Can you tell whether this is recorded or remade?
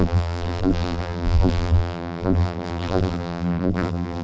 remade